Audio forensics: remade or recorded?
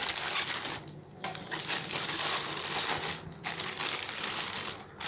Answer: recorded